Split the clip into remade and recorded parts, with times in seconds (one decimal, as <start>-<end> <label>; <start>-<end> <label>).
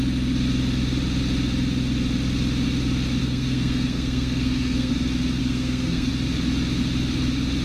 0.0-3.2 recorded; 3.2-4.9 remade; 4.9-5.4 recorded; 5.4-6.1 remade; 6.1-7.6 recorded